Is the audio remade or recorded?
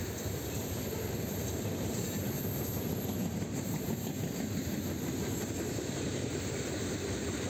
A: remade